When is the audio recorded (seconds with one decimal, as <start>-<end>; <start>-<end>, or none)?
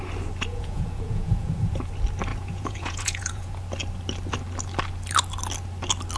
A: 0.0-0.5; 1.9-2.3; 3.6-6.2